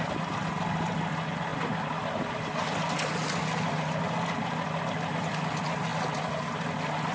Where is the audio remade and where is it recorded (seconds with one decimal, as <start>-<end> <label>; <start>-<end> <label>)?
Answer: 0.0-7.1 recorded